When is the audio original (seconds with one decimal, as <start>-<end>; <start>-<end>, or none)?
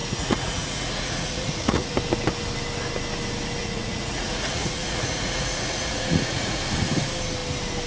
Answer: 1.9-3.6; 6.6-7.9